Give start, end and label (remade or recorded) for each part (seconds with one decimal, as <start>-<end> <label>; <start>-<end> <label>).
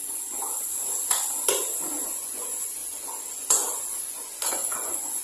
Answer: 0.0-0.8 remade; 0.8-2.0 recorded; 2.0-5.2 remade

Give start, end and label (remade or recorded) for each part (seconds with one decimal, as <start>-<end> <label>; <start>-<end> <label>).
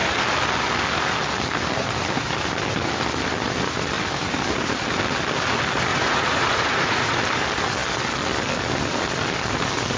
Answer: 0.0-5.9 recorded; 5.9-7.2 remade; 7.2-10.0 recorded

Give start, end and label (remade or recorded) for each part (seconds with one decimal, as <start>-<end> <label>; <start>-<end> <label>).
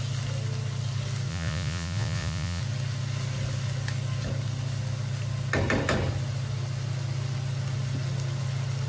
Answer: 0.0-1.3 recorded; 1.3-2.6 remade; 2.6-8.9 recorded